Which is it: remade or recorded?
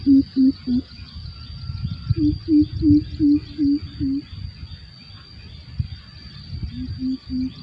recorded